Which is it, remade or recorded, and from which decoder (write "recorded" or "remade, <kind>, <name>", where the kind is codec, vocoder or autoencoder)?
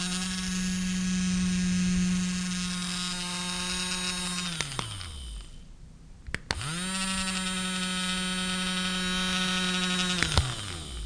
recorded